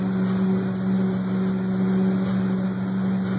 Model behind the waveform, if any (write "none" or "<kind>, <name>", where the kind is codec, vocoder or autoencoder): none